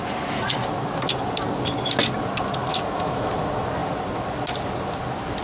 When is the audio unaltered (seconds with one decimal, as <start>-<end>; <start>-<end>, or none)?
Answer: 0.0-2.7; 3.3-5.4